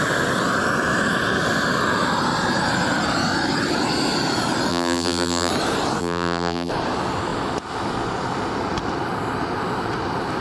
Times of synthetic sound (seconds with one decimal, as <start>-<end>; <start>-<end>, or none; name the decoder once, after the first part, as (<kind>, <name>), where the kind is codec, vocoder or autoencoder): 4.7-5.5 (vocoder, BigVGAN v2); 6.0-6.7